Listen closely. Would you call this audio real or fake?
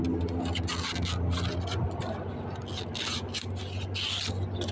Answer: real